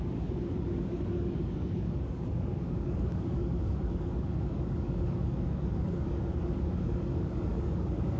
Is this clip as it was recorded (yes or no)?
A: no